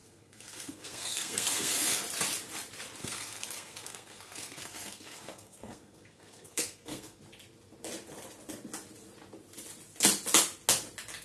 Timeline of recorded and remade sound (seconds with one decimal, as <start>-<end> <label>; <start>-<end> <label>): 0.0-2.0 remade; 2.0-3.0 recorded; 3.0-7.2 remade; 7.2-11.2 recorded